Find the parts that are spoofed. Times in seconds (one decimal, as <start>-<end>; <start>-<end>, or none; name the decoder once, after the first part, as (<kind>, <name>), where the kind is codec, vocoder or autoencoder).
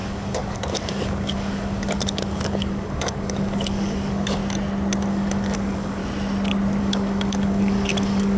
0.0-4.4 (codec, DAC); 5.1-6.0; 6.8-8.4